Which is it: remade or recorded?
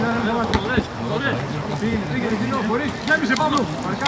recorded